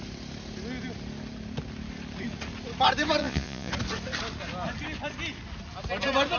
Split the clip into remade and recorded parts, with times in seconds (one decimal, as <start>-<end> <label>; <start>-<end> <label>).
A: 0.0-3.2 recorded; 3.2-3.7 remade; 3.7-6.4 recorded